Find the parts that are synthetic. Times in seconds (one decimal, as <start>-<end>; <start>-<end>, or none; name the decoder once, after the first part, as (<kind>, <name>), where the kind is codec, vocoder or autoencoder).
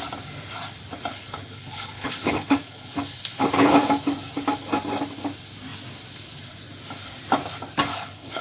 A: 1.1-3.8 (codec, HILCodec); 7.9-8.4